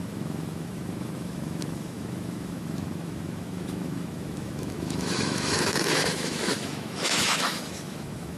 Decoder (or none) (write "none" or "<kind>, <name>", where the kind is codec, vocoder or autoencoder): autoencoder, DAC-VAE